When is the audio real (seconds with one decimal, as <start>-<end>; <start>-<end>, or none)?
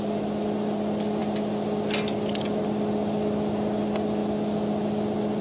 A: 0.0-5.4